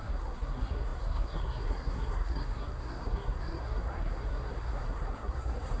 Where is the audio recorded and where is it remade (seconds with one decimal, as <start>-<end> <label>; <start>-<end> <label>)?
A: 0.0-5.8 remade

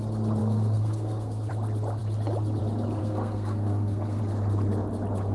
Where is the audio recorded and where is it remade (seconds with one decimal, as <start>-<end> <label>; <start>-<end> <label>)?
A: 0.0-0.4 recorded; 0.4-1.5 remade; 1.5-3.0 recorded; 3.0-4.2 remade; 4.2-5.3 recorded

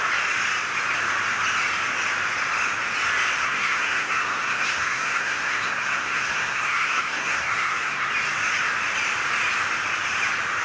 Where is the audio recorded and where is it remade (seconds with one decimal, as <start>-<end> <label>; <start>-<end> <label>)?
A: 0.0-3.4 recorded; 3.4-8.1 remade; 8.1-10.6 recorded

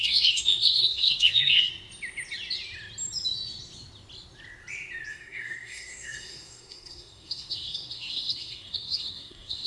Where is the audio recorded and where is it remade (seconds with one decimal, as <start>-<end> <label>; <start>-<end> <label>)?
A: 0.0-1.7 remade; 1.7-5.1 recorded; 5.1-9.7 remade

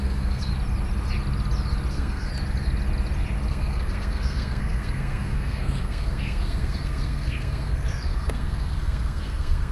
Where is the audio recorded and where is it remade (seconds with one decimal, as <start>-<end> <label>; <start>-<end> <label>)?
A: 0.0-0.5 remade; 0.5-1.9 recorded; 1.9-2.3 remade; 2.3-3.5 recorded; 3.5-9.7 remade

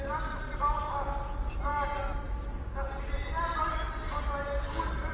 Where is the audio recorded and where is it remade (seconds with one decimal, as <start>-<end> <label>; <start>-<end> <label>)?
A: 0.0-5.1 recorded